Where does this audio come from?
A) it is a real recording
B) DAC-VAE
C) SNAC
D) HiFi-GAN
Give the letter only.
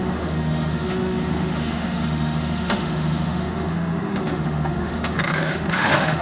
B